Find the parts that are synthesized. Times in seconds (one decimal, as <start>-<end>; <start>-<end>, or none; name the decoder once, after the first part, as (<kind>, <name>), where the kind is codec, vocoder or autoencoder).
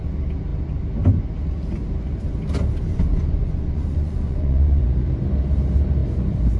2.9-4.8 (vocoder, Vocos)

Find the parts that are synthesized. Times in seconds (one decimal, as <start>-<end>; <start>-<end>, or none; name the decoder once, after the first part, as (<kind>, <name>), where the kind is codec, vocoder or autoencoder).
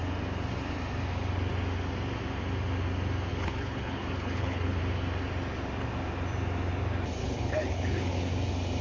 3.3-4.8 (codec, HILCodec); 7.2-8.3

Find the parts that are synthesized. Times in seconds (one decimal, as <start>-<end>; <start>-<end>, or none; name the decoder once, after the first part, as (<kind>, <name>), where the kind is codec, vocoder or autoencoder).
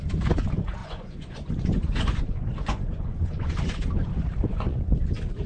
0.8-4.1 (vocoder, Vocos); 4.5-5.5